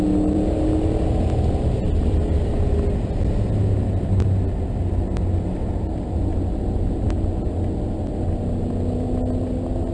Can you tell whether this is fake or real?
real